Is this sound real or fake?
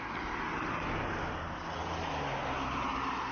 real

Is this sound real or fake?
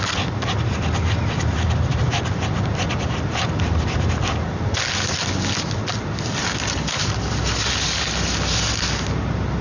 real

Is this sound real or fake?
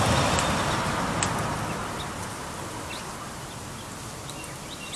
real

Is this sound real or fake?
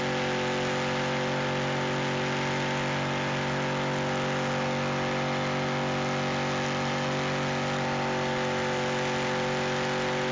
real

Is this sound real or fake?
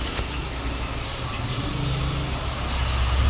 real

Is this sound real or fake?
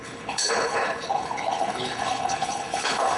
fake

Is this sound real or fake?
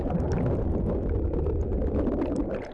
real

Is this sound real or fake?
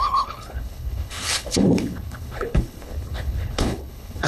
fake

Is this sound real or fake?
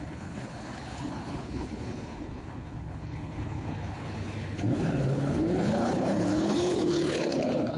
fake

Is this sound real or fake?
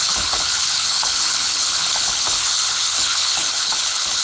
fake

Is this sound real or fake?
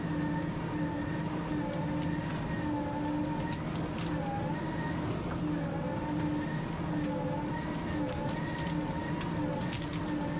real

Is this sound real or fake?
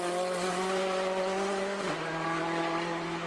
real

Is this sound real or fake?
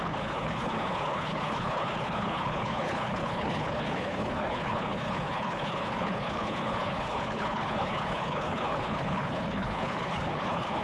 fake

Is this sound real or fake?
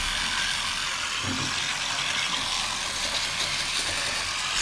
real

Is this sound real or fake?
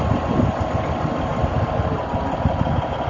real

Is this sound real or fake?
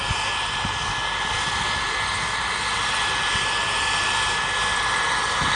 real